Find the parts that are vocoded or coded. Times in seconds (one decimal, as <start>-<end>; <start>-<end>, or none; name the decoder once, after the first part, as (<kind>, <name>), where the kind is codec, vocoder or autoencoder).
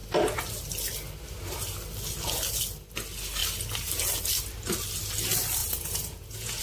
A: 5.6-6.6 (vocoder, Vocos)